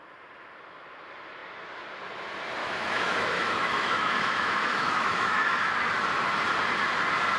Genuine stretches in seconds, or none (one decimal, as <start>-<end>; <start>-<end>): 0.0-2.6; 5.7-7.4